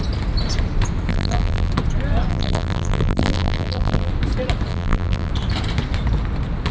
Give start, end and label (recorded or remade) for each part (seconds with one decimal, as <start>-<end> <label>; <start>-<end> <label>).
0.0-1.1 recorded; 1.1-1.7 remade; 1.7-2.3 recorded; 2.3-4.1 remade; 4.1-4.7 recorded; 4.7-5.3 remade; 5.3-6.7 recorded